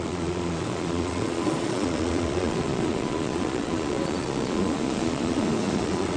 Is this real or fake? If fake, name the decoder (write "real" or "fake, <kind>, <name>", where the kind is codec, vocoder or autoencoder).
fake, vocoder, Vocos